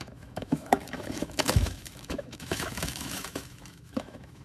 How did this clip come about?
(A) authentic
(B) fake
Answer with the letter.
B